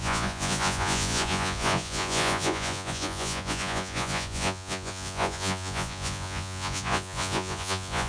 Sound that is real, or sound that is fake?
fake